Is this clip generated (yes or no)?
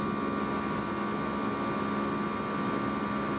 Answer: no